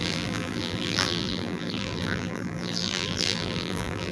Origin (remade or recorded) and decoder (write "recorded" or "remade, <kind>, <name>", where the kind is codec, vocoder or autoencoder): remade, vocoder, BigVGAN v2